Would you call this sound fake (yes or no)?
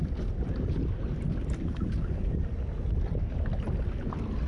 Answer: no